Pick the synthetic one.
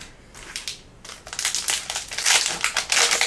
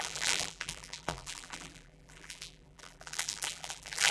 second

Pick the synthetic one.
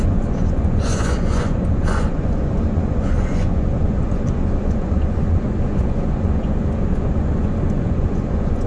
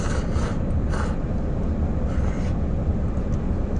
first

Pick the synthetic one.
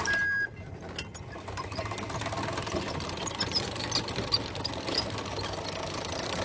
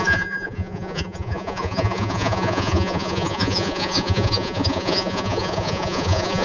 second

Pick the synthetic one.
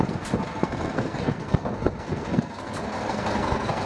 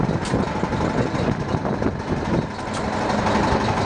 first